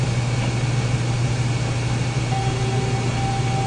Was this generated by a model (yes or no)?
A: no